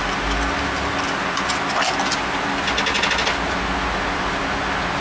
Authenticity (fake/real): real